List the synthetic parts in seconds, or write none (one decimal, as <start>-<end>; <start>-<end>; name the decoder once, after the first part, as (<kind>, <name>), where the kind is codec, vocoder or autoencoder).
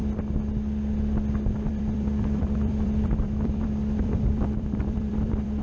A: 1.7-5.6 (vocoder, BigVGAN v2)